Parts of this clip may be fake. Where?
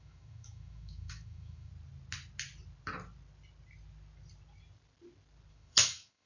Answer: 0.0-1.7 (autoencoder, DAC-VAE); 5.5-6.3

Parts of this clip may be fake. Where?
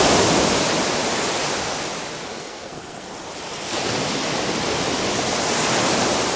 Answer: 2.3-3.1 (codec, SNAC)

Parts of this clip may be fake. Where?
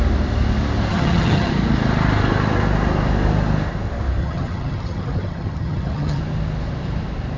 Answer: 0.9-1.5 (vocoder, HiFi-GAN); 4.2-6.2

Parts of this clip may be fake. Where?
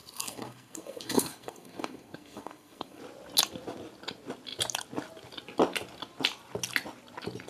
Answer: 0.0-3.0 (codec, SNAC)